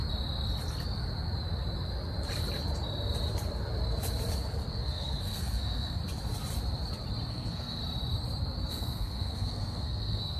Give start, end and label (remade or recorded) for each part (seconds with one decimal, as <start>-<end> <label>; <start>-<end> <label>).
0.0-4.7 recorded; 4.7-6.0 remade; 6.0-7.3 recorded; 7.3-7.8 remade; 7.8-8.7 recorded; 8.7-10.4 remade